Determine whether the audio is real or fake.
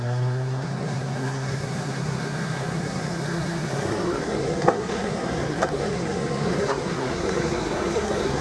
fake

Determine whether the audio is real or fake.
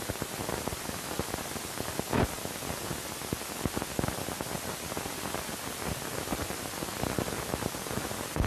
real